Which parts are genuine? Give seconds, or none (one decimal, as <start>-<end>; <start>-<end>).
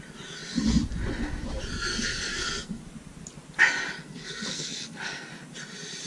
0.0-1.9; 2.8-4.0; 5.3-6.1